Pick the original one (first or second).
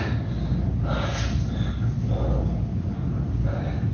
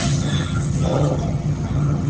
first